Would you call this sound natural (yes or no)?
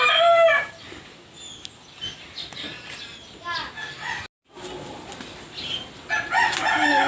yes